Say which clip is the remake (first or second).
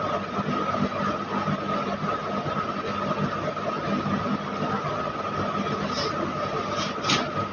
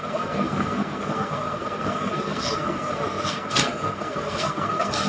second